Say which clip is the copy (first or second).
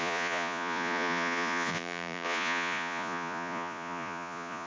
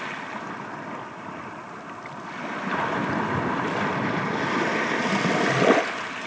first